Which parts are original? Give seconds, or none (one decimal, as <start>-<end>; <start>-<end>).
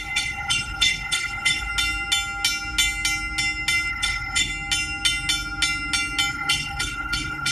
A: 1.7-3.9; 4.5-6.3